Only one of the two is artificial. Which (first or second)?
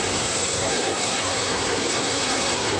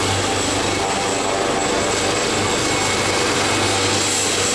first